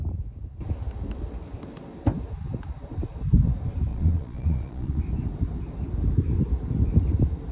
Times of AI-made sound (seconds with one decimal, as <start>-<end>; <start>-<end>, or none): 3.9-5.0